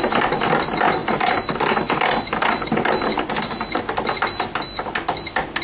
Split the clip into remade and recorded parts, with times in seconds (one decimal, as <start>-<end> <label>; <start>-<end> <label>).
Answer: 0.0-5.6 recorded